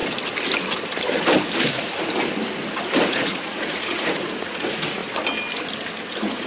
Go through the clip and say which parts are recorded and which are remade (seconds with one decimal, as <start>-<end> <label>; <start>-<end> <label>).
0.0-3.1 recorded; 3.1-5.0 remade; 5.0-6.1 recorded; 6.1-6.5 remade